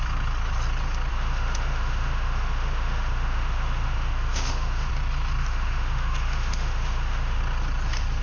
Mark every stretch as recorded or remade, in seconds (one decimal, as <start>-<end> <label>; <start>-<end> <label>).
0.0-1.1 recorded; 1.1-4.9 remade; 4.9-5.4 recorded; 5.4-7.4 remade; 7.4-8.2 recorded